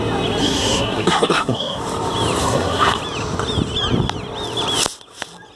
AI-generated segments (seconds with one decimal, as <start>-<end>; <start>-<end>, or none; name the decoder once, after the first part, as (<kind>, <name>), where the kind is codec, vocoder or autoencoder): 0.4-1.8 (codec, SNAC); 2.4-3.0